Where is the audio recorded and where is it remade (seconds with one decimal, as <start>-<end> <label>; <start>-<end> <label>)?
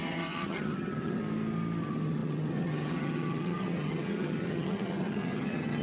0.0-1.2 remade; 1.2-1.8 recorded; 1.8-5.8 remade